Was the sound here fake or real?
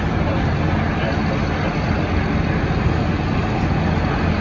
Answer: real